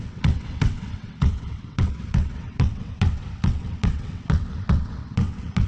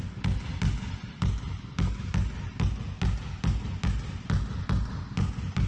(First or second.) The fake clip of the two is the first